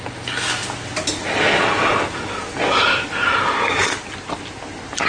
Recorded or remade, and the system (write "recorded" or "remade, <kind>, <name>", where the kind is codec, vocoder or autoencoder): recorded